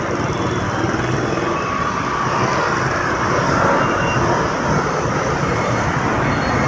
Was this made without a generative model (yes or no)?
yes